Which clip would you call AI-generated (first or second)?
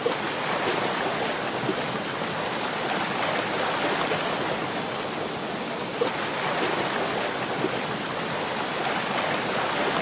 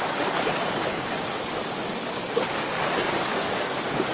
second